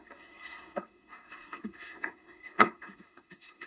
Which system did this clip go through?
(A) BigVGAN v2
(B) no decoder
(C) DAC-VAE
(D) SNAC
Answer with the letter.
D